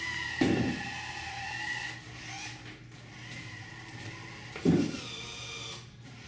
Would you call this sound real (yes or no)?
yes